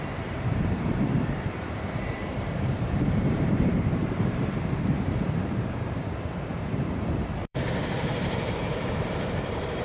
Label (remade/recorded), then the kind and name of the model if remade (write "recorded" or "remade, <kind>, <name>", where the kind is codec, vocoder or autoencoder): remade, vocoder, BigVGAN v2